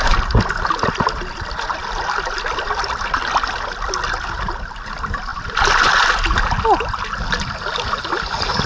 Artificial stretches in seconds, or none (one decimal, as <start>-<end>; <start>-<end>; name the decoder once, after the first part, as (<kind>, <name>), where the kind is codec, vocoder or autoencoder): none